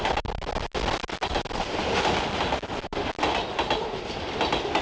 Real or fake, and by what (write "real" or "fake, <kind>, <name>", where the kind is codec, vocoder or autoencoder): real